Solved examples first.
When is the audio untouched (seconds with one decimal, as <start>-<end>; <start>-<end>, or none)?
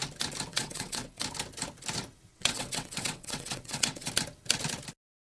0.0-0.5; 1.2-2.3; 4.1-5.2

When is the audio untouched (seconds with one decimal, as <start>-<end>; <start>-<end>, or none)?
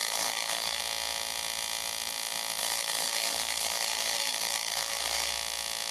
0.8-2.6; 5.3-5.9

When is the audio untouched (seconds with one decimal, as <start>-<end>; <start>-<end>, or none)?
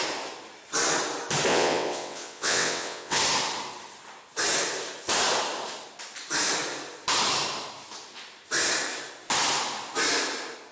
0.0-1.5; 3.2-10.7